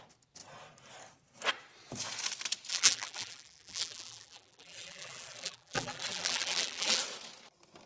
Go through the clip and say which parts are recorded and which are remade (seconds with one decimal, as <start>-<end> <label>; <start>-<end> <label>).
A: 0.0-2.7 recorded; 2.7-7.0 remade; 7.0-7.9 recorded

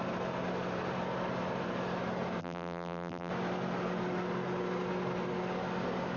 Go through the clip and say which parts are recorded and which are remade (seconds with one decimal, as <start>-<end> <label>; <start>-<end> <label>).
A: 0.0-2.4 recorded; 2.4-3.3 remade; 3.3-6.2 recorded

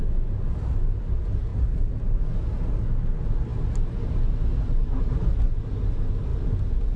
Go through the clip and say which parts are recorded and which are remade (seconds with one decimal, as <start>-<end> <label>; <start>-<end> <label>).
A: 0.0-6.3 recorded; 6.3-7.0 remade

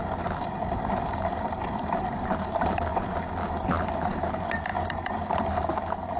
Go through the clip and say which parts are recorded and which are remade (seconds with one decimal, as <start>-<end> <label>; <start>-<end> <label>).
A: 0.0-2.9 remade; 2.9-3.5 recorded; 3.5-6.2 remade

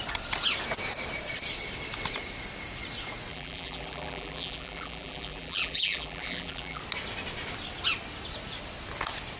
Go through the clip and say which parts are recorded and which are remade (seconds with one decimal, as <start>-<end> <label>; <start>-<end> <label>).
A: 0.0-3.3 recorded; 3.3-6.8 remade; 6.8-9.4 recorded

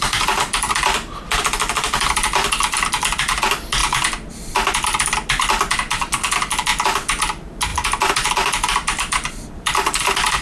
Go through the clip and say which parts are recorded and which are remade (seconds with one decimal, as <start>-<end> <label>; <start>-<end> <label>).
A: 0.0-3.8 remade; 3.8-5.3 recorded; 5.3-6.7 remade; 6.7-7.2 recorded; 7.2-10.4 remade